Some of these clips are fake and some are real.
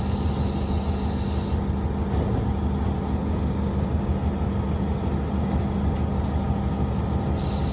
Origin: real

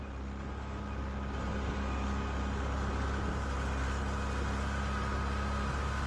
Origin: real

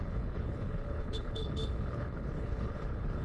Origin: fake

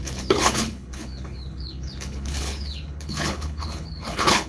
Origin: fake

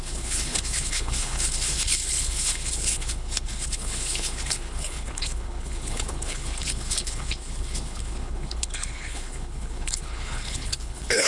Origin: fake